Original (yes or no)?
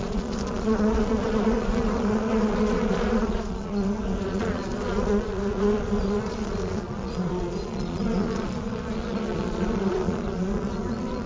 no